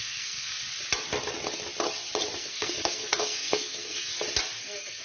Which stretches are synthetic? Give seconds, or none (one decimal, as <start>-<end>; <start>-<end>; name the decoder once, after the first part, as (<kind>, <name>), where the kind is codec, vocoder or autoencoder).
0.0-0.6 (codec, SNAC); 2.4-4.1; 4.6-5.0